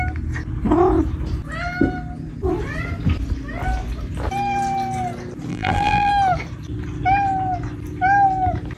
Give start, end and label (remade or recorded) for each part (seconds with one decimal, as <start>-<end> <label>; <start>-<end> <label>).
0.0-5.5 recorded; 5.5-6.1 remade; 6.1-8.8 recorded